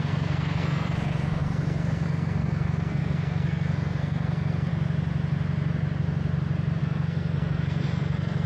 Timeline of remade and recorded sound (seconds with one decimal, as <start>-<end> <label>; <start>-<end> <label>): 0.0-4.7 remade; 4.7-6.8 recorded; 6.8-8.5 remade